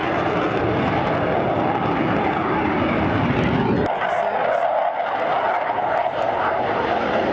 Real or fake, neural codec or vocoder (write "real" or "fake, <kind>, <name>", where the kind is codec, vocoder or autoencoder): real